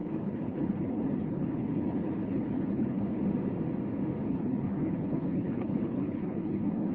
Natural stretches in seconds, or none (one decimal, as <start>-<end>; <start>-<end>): 3.2-4.3